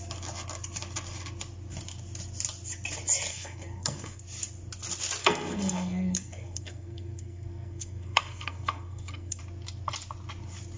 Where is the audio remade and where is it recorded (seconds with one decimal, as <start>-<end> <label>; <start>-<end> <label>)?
0.0-3.3 recorded; 3.3-4.2 remade; 4.2-5.2 recorded; 5.2-9.4 remade; 9.4-10.8 recorded